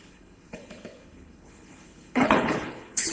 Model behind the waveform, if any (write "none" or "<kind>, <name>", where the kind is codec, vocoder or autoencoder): codec, HILCodec